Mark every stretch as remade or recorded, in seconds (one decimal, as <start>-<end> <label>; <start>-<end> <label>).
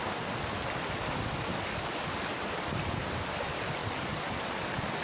0.0-3.8 recorded; 3.8-5.0 remade